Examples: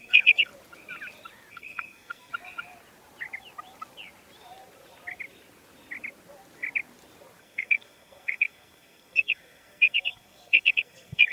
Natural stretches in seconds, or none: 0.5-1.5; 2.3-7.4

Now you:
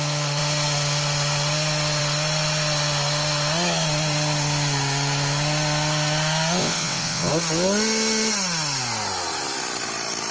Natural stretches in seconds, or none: 0.0-6.6; 7.3-10.3

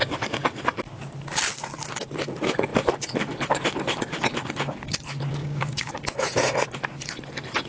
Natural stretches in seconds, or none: 0.0-5.4; 5.9-7.7

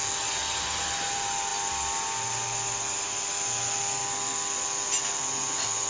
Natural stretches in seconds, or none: 0.0-5.9

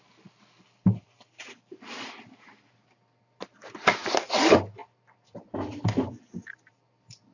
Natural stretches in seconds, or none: 0.0-7.3

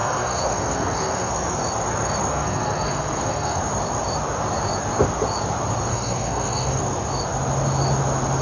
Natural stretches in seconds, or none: 1.3-2.3; 3.6-5.9; 6.8-8.4